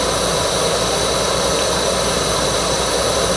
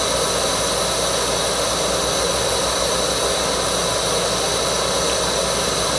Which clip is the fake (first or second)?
first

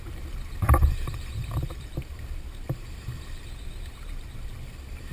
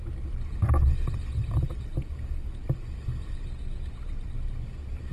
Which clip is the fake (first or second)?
first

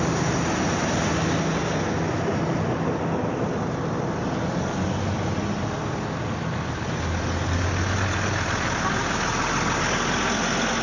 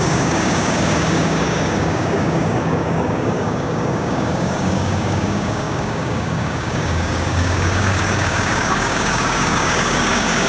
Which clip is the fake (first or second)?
second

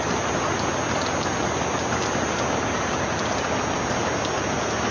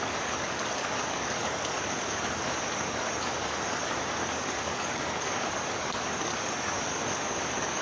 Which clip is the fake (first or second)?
second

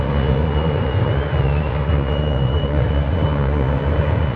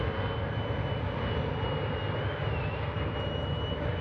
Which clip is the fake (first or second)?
first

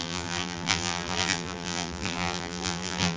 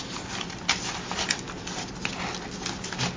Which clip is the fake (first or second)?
first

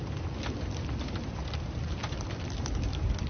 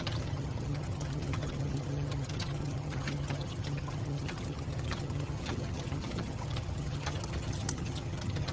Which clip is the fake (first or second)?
second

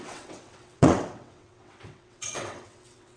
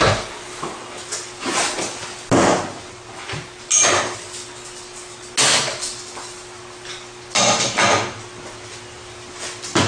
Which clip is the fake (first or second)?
first